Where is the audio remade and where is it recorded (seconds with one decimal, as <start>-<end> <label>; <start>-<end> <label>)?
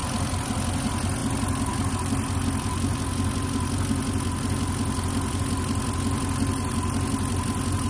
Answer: 0.0-7.9 recorded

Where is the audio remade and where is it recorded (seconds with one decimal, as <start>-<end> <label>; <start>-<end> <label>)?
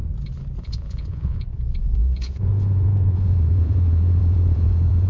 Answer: 0.0-0.6 recorded; 0.6-5.1 remade